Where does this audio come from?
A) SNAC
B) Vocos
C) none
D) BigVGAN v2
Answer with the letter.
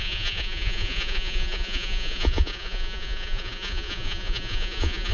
B